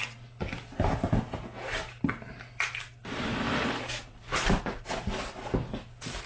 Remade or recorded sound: recorded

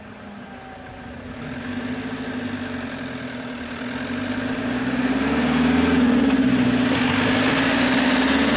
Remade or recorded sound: recorded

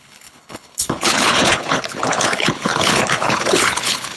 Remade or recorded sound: remade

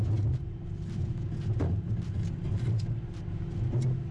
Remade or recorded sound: recorded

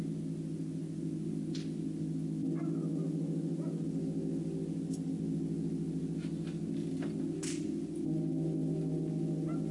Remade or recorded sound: recorded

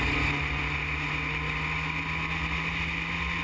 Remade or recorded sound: recorded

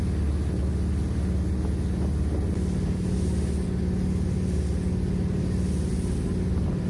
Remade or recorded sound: recorded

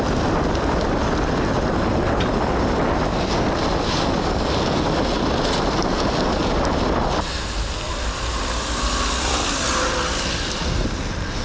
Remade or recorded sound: recorded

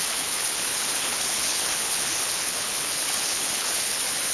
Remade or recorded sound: remade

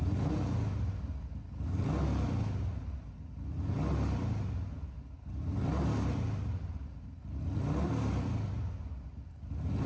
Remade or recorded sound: recorded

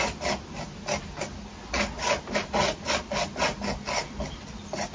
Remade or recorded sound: recorded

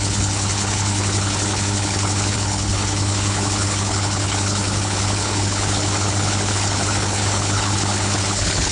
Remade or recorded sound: remade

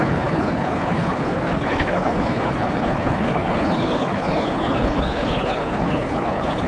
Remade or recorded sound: remade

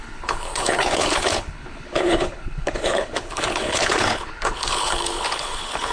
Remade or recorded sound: remade